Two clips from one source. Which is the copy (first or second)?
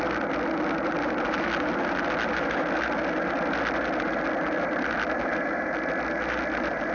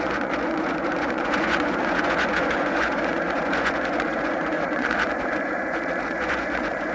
second